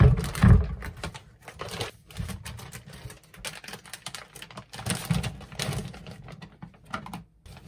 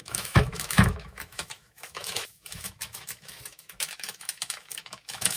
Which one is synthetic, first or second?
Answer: second